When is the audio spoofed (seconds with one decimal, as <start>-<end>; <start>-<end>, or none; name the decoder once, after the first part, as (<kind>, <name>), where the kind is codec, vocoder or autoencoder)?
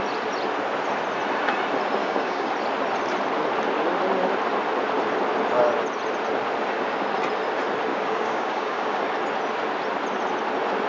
2.0-2.5 (codec, DAC); 7.9-9.0